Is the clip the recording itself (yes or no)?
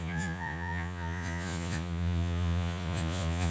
no